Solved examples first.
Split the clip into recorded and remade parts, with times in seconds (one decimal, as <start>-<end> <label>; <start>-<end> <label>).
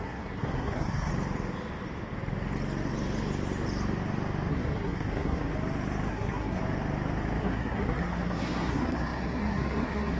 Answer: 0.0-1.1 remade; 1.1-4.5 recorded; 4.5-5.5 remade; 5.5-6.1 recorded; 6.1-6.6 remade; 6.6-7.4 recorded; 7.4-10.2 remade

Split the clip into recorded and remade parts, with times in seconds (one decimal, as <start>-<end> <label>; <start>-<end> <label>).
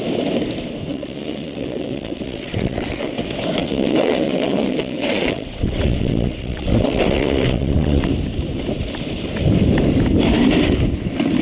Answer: 0.0-0.9 recorded; 0.9-3.1 remade; 3.1-3.6 recorded; 3.6-8.1 remade; 8.1-11.4 recorded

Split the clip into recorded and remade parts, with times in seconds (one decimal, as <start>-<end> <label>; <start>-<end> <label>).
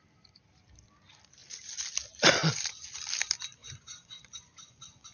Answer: 0.0-3.6 recorded; 3.6-5.1 remade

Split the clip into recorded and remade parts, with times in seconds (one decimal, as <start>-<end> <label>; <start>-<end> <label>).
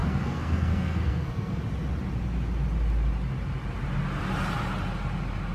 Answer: 0.0-1.6 remade; 1.6-5.5 recorded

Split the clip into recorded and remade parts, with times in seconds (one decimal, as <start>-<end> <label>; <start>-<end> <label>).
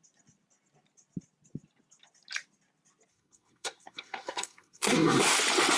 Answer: 0.0-3.1 recorded; 3.1-5.2 remade; 5.2-5.8 recorded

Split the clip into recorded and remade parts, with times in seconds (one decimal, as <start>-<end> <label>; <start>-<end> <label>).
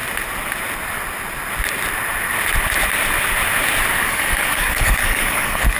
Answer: 0.0-4.0 recorded; 4.0-5.8 remade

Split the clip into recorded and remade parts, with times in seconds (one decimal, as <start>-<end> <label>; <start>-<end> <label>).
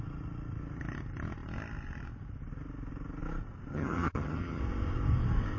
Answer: 0.0-3.7 recorded; 3.7-4.6 remade; 4.6-5.6 recorded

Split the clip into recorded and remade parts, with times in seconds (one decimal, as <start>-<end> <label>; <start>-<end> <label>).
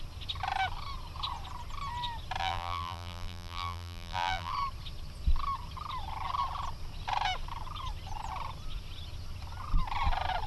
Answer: 0.0-2.4 recorded; 2.4-4.5 remade; 4.5-10.5 recorded